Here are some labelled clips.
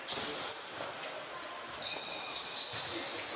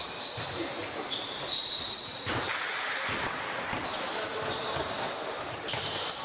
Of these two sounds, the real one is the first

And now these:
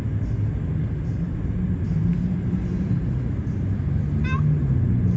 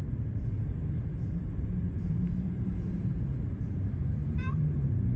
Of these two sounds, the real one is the first